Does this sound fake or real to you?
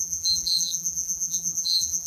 fake